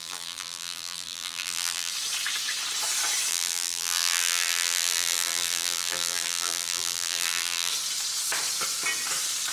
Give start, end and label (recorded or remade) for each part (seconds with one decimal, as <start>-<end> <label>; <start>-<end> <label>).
0.0-1.9 remade; 1.9-3.3 recorded; 3.3-7.7 remade; 7.7-9.5 recorded